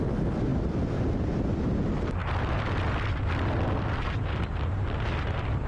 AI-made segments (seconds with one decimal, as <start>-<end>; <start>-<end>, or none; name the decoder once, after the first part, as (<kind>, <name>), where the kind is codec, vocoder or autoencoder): 2.2-3.8 (vocoder, BigVGAN v2)